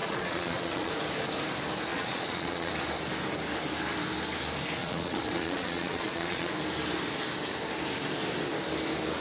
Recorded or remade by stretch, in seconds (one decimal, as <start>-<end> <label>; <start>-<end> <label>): 0.0-0.9 remade; 0.9-1.9 recorded; 1.9-2.7 remade; 2.7-4.8 recorded; 4.8-6.5 remade; 6.5-9.2 recorded